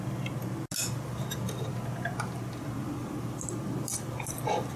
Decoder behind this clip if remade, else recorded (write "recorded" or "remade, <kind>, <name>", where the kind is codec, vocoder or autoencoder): recorded